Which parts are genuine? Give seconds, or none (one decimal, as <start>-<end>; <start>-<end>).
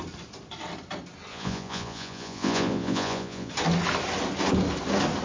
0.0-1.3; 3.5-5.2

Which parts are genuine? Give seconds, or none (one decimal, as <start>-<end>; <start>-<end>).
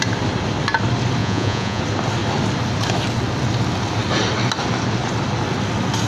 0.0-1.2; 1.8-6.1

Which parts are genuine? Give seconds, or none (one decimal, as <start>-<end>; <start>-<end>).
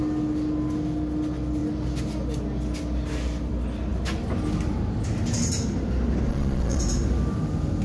0.0-6.3; 6.8-7.8